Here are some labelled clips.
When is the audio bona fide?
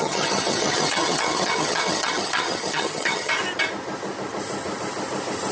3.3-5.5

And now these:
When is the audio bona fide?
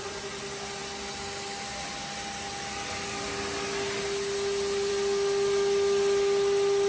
0.0-6.9